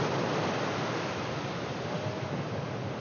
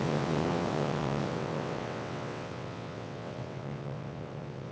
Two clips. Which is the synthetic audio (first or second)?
second